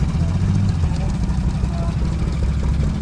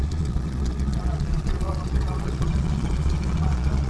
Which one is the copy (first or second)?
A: second